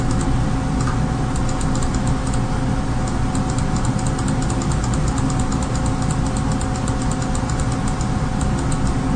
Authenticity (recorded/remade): recorded